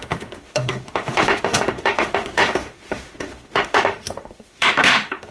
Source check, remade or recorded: remade